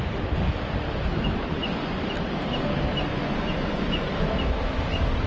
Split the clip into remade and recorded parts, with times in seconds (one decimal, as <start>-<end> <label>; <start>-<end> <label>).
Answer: 0.0-1.5 recorded; 1.5-2.1 remade; 2.1-3.1 recorded; 3.1-4.1 remade; 4.1-5.3 recorded